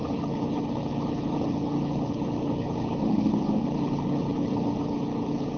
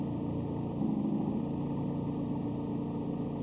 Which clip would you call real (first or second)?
second